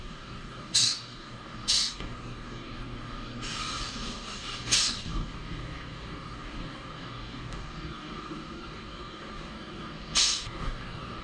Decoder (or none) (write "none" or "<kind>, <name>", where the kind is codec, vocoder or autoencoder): codec, DAC